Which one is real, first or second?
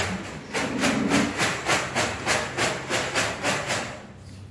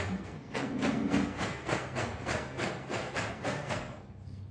first